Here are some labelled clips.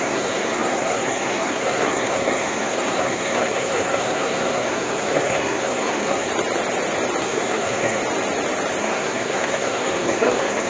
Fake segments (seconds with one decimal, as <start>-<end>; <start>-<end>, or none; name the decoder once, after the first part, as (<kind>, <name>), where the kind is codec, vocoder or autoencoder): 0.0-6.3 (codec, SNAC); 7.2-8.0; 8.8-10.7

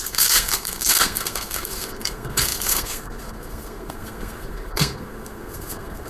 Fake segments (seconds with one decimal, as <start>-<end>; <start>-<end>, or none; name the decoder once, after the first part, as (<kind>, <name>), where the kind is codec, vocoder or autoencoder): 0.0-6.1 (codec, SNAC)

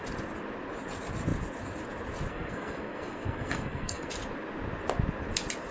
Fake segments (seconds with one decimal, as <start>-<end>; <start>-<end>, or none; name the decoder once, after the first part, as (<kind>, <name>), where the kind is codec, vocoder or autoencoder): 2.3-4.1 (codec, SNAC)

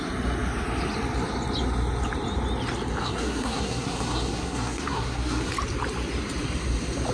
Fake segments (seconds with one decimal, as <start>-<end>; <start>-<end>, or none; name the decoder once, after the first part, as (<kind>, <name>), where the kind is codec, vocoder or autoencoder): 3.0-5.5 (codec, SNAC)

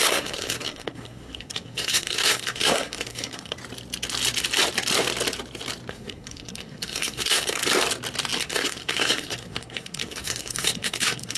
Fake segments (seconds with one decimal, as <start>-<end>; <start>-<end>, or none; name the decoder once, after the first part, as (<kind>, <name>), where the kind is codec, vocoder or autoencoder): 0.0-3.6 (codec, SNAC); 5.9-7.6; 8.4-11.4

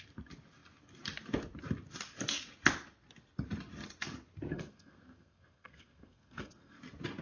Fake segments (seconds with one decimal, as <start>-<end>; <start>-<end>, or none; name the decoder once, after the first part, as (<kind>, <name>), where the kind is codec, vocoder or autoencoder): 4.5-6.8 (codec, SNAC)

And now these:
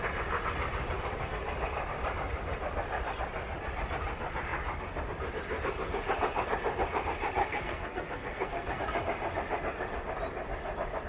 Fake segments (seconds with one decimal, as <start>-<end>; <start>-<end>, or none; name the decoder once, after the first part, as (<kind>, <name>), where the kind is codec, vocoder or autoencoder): 7.4-8.8 (codec, SNAC)

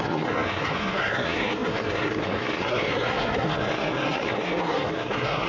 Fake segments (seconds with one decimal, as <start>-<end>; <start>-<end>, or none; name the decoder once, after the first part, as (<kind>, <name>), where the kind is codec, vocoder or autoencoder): 0.0-5.5 (codec, SNAC)